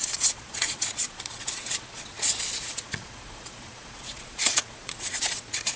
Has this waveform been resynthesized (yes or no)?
yes